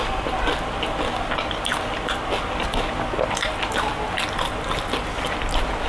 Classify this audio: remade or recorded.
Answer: recorded